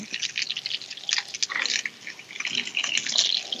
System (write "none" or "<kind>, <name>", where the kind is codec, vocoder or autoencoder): none